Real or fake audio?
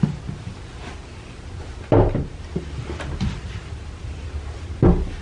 real